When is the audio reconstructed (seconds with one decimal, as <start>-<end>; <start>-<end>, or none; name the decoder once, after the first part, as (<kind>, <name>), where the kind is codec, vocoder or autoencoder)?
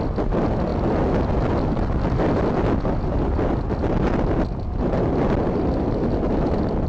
none